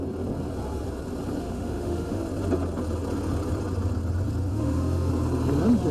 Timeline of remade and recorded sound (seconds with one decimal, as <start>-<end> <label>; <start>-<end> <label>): 0.0-1.4 recorded; 1.4-2.2 remade; 2.2-4.5 recorded; 4.5-5.1 remade; 5.1-5.9 recorded